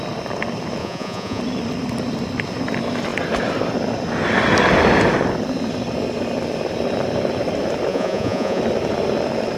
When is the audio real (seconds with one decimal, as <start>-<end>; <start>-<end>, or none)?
0.0-0.8; 1.4-7.9; 8.6-9.6